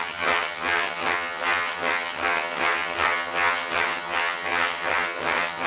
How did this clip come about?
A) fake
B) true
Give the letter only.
A